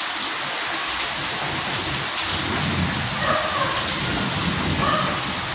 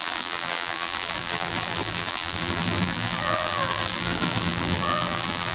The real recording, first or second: first